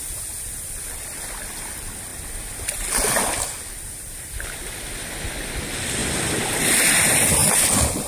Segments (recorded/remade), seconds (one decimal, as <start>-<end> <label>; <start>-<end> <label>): 0.0-8.1 recorded